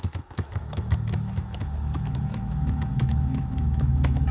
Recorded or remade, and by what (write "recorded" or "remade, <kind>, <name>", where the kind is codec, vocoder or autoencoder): remade, autoencoder, DAC-VAE